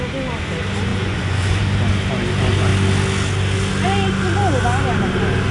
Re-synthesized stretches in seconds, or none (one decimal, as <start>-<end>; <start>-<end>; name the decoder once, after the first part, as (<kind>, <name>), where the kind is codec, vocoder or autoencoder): 0.9-1.6 (vocoder, Vocos)